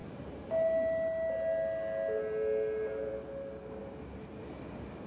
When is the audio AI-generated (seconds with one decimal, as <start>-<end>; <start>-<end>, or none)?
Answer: none